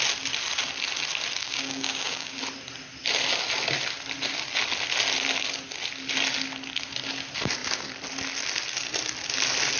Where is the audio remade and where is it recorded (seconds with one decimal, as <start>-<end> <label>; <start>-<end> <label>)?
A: 0.0-1.4 recorded; 1.4-2.4 remade; 2.4-9.8 recorded